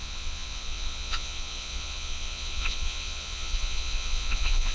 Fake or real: fake